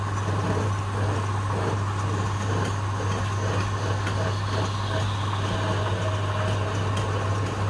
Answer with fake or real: real